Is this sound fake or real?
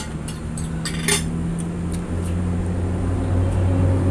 real